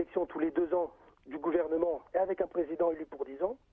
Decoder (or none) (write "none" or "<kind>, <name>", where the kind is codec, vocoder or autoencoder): none